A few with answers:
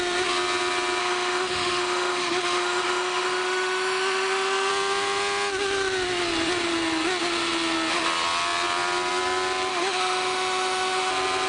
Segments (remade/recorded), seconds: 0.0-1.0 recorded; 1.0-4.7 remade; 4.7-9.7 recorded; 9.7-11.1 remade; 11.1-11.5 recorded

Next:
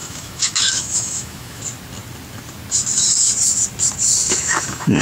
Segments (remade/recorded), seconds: 0.0-1.6 remade; 1.6-4.2 recorded; 4.2-5.0 remade